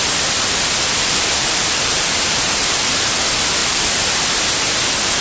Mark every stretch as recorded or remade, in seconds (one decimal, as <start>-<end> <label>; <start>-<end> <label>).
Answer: 0.0-1.4 recorded; 1.4-2.8 remade; 2.8-3.6 recorded; 3.6-4.4 remade; 4.4-5.2 recorded